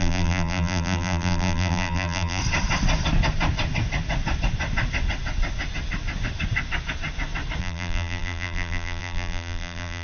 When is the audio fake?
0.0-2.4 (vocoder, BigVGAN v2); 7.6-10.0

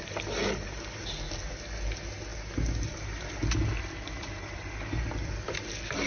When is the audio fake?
none

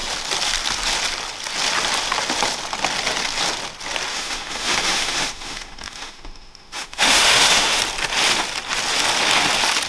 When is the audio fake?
4.1-7.8 (autoencoder, DAC-VAE)

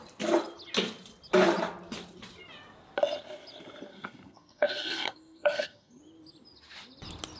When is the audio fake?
3.9-6.0 (codec, SNAC)

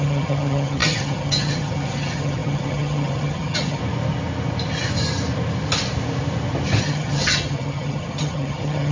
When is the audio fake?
0.0-3.8 (vocoder, HiFi-GAN); 6.8-8.9